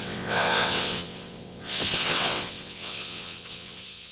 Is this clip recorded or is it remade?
remade